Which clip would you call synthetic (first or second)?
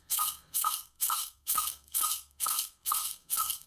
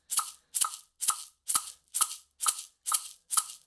first